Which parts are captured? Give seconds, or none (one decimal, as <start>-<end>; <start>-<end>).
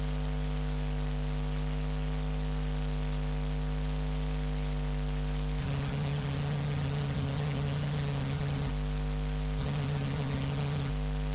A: 0.0-5.6; 8.7-9.6; 10.9-11.3